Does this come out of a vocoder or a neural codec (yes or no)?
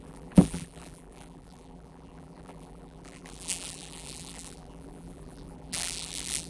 yes